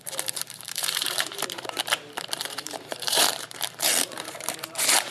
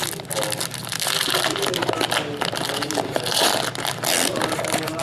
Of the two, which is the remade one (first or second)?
first